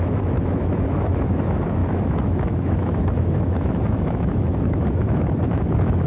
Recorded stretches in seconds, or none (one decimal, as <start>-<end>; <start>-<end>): none